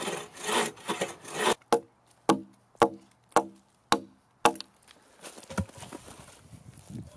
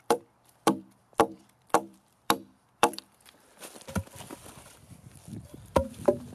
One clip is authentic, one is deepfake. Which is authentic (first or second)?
first